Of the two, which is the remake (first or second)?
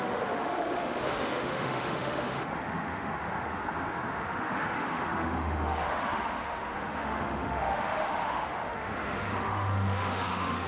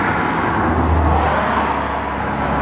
first